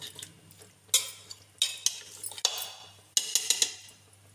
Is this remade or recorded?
recorded